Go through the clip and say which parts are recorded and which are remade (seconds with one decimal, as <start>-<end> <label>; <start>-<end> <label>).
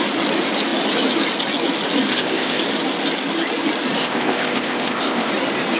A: 0.0-2.1 recorded; 2.1-2.6 remade; 2.6-4.0 recorded; 4.0-5.3 remade; 5.3-5.8 recorded